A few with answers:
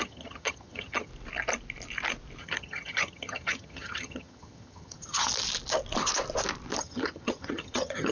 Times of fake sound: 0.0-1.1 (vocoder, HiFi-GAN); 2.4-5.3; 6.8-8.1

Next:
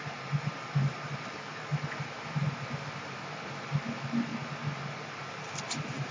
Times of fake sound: none